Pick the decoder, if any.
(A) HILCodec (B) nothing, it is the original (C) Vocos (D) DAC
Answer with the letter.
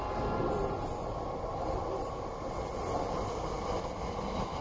B